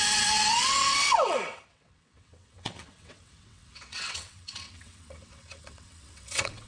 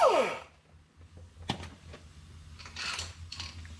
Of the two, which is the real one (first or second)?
second